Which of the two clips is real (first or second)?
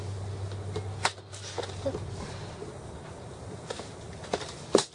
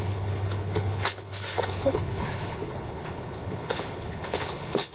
first